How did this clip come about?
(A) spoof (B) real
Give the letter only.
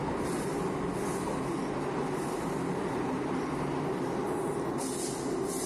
B